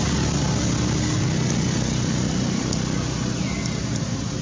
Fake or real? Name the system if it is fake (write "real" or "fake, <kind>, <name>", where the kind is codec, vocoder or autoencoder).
real